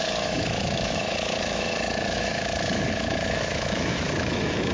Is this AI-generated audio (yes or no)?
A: yes